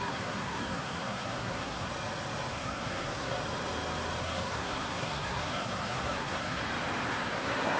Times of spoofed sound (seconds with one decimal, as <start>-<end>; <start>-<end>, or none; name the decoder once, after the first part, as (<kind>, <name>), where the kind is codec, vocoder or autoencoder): 0.0-1.9 (codec, SNAC); 2.5-3.4; 4.2-6.6; 7.1-7.8